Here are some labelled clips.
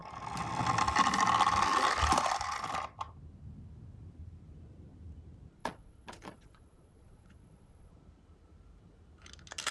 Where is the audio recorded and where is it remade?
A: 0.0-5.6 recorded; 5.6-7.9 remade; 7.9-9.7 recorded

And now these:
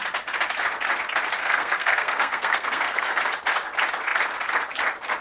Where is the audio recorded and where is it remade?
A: 0.0-1.4 recorded; 1.4-3.2 remade; 3.2-5.2 recorded

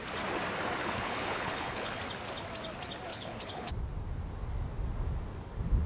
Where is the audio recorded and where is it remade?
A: 0.0-0.8 recorded; 0.8-2.0 remade; 2.0-3.1 recorded; 3.1-3.7 remade; 3.7-5.9 recorded